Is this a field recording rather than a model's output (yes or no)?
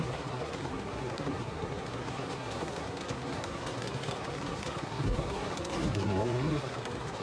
no